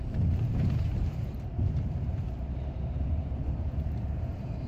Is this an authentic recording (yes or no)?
no